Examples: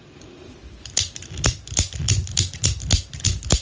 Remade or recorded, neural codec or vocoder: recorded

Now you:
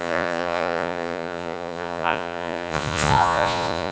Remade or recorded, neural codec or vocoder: remade, vocoder, Vocos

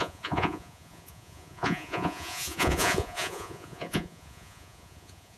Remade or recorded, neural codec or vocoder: remade, vocoder, Vocos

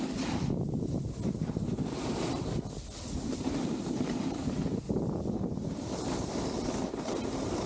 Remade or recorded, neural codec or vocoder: recorded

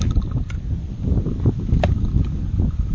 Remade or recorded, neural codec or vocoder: recorded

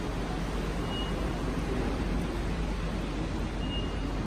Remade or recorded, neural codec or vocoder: recorded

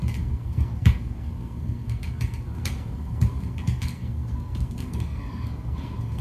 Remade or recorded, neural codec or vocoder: remade, codec, SNAC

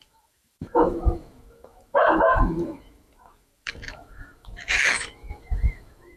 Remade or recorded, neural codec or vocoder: remade, autoencoder, DAC-VAE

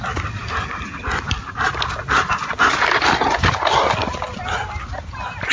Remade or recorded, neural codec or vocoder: recorded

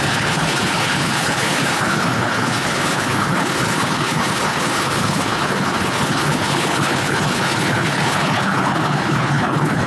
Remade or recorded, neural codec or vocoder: remade, codec, HILCodec